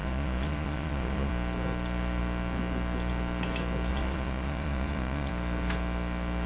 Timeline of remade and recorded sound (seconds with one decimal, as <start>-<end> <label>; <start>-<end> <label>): 0.0-1.3 remade; 1.3-3.9 recorded; 3.9-5.3 remade; 5.3-6.5 recorded